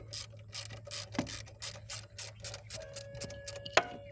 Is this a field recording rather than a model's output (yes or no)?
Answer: yes